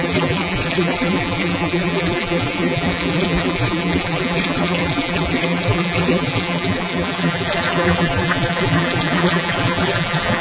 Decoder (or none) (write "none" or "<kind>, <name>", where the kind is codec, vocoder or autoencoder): vocoder, BigVGAN v2